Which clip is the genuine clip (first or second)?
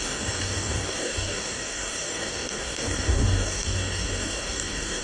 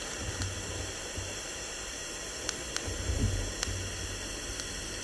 second